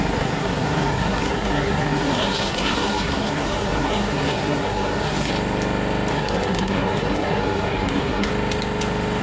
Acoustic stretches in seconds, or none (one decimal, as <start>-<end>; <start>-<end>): 5.3-6.1; 8.3-9.2